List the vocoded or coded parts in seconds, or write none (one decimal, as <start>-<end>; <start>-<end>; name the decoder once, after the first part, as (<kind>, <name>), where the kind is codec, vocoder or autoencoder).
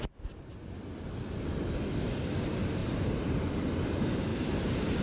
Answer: 2.8-3.4 (vocoder, BigVGAN v2); 4.3-5.0